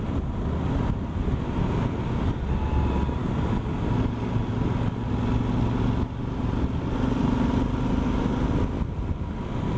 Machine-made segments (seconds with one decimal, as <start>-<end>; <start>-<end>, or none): none